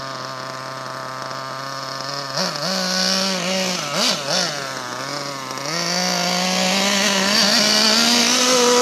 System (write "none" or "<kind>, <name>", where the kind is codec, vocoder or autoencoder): none